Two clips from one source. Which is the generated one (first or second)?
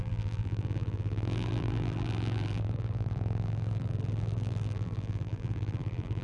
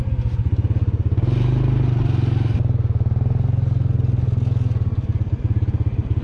first